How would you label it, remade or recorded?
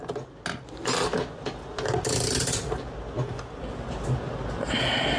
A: recorded